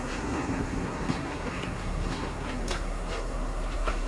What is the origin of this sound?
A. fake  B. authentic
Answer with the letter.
A